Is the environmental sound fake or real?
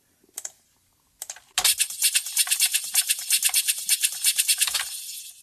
real